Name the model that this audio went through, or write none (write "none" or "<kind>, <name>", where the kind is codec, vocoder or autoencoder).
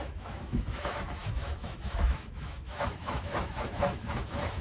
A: autoencoder, DAC-VAE